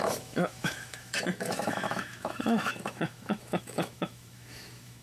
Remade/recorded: remade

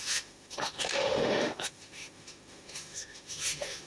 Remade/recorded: remade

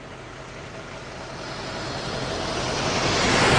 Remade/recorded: recorded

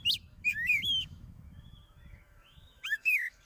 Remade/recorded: remade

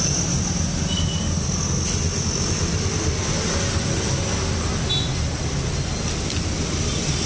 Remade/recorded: recorded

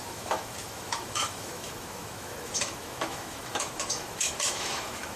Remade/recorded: remade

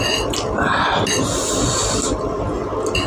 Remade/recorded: recorded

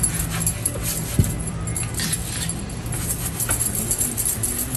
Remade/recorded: recorded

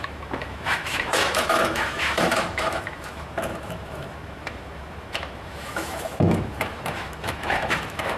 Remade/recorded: remade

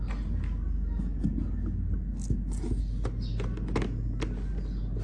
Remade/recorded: recorded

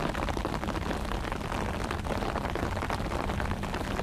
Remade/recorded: recorded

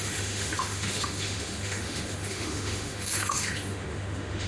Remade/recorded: remade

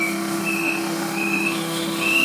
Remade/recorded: remade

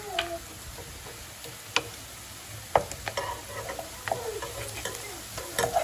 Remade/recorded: recorded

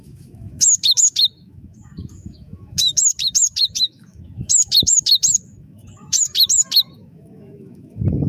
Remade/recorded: remade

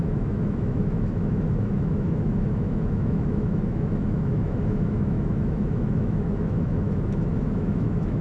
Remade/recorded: remade